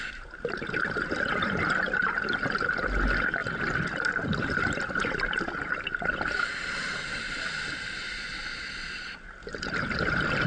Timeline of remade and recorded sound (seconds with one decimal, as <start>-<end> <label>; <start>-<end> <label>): 0.0-10.5 recorded